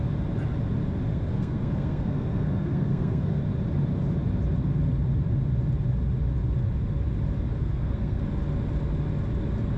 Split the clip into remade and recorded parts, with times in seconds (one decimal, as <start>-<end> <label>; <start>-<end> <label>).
0.0-1.1 recorded; 1.1-3.4 remade; 3.4-7.6 recorded; 7.6-8.2 remade; 8.2-9.8 recorded